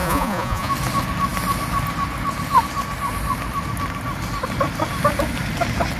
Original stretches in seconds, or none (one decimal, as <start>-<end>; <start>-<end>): 0.7-6.0